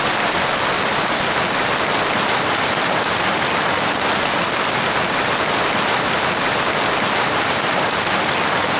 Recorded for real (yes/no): yes